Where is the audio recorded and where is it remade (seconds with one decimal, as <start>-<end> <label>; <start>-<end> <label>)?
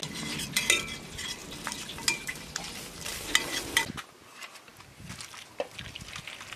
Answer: 0.0-6.6 recorded